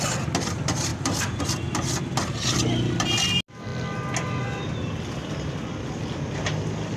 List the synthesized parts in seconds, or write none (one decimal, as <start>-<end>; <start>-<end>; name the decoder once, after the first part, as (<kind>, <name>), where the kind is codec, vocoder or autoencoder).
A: 0.9-1.4 (vocoder, BigVGAN v2)